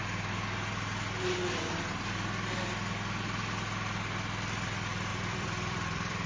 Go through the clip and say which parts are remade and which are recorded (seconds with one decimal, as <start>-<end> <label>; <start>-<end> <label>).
0.0-5.1 recorded; 5.1-6.3 remade